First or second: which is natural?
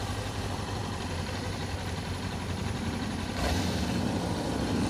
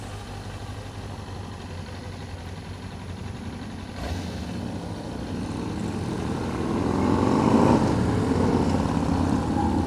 second